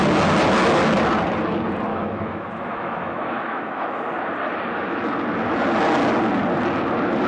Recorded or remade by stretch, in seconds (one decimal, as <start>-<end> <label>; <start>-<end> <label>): 0.0-1.9 recorded; 1.9-4.0 remade; 4.0-7.3 recorded